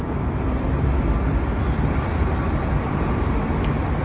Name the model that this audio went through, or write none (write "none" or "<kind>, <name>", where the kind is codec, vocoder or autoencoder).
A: none